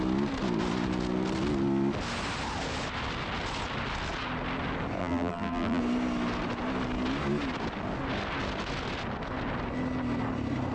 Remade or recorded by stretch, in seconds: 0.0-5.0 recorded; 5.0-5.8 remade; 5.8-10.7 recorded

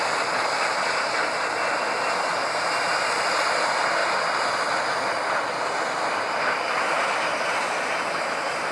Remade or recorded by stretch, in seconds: 0.0-4.0 remade; 4.0-5.8 recorded; 5.8-8.7 remade

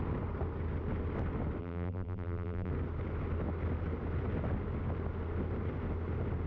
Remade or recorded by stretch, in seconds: 0.0-1.6 recorded; 1.6-2.7 remade; 2.7-6.5 recorded